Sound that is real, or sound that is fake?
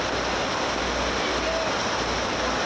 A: real